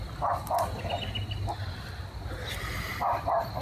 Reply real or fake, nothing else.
real